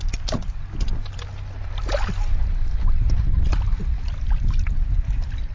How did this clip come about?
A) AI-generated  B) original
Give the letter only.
B